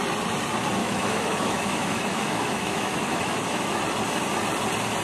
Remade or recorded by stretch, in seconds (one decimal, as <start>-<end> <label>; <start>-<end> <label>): 0.0-0.8 recorded; 0.8-3.8 remade; 3.8-5.0 recorded